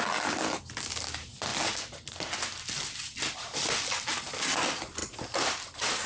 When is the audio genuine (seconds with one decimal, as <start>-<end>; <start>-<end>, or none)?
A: 0.0-6.1